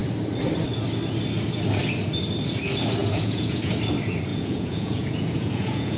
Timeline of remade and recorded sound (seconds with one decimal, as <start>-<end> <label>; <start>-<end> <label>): 0.0-3.0 recorded; 3.0-3.7 remade; 3.7-4.3 recorded; 4.3-6.0 remade